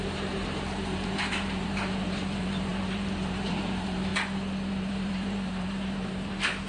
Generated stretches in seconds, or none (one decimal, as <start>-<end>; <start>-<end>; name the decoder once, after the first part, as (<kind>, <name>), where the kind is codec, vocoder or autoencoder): 0.0-4.1 (vocoder, BigVGAN v2); 4.7-6.7